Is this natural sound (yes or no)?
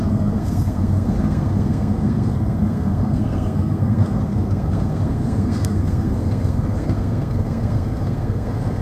no